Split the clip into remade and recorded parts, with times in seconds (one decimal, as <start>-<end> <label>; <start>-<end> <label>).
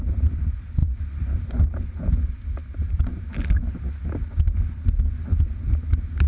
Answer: 0.0-6.3 recorded